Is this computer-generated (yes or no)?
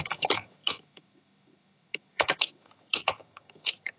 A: yes